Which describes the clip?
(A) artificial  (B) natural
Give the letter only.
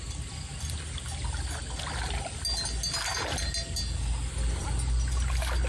B